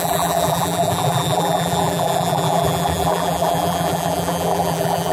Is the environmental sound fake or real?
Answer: fake